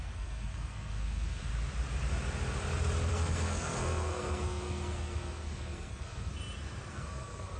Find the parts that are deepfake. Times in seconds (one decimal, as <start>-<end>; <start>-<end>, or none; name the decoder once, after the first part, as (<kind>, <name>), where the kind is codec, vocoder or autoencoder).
0.0-1.5 (codec, SNAC); 3.1-6.3; 6.9-7.6